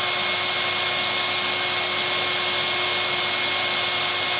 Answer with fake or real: real